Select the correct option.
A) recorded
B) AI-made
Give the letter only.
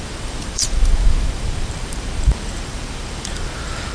B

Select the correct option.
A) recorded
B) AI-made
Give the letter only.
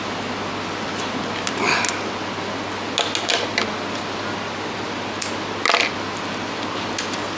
A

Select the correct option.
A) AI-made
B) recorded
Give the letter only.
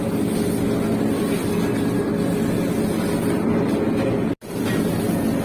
B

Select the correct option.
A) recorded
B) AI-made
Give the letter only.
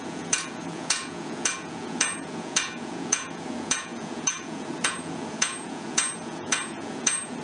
B